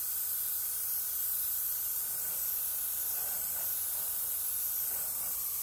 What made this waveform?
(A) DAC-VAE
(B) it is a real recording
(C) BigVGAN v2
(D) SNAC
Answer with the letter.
B